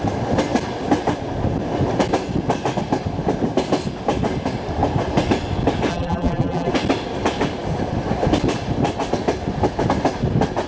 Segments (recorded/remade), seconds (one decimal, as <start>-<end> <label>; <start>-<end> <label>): 0.0-5.9 recorded; 5.9-6.7 remade; 6.7-10.7 recorded